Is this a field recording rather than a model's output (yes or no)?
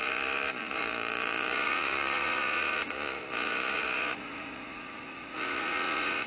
no